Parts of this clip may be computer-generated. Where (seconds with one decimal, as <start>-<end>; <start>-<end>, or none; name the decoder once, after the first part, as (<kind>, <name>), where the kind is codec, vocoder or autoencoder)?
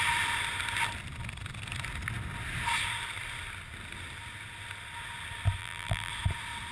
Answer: 5.6-6.1 (vocoder, BigVGAN v2)